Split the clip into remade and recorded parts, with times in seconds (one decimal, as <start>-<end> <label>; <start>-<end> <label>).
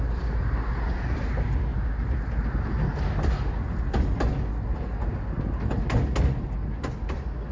0.0-7.5 recorded